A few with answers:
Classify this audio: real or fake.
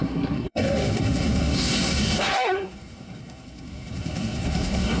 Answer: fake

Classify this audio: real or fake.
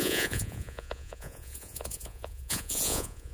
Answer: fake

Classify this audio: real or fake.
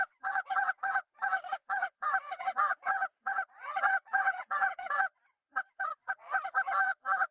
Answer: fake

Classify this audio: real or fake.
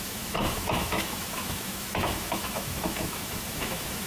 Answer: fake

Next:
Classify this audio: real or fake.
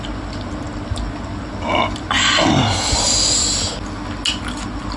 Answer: real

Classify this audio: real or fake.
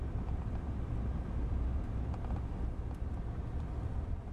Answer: real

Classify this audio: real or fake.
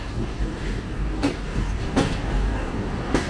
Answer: fake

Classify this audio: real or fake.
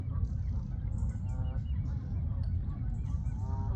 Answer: real